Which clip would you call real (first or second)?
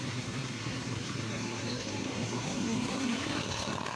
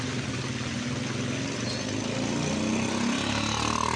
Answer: second